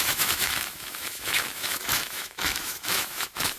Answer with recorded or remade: remade